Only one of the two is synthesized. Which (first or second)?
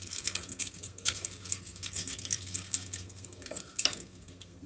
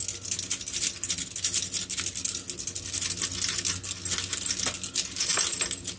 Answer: first